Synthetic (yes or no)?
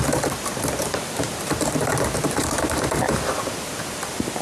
yes